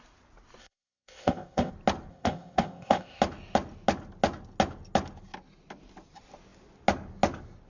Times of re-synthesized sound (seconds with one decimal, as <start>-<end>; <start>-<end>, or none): 0.6-1.7; 2.1-3.2